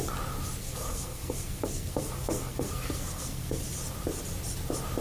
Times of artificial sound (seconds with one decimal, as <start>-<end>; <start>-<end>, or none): 0.6-3.6